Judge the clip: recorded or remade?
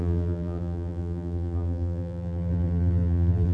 remade